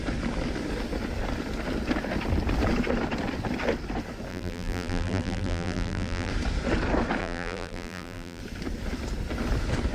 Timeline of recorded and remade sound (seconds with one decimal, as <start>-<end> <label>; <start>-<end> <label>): 0.0-4.3 recorded; 4.3-6.3 remade; 6.3-7.2 recorded; 7.2-8.4 remade; 8.4-9.9 recorded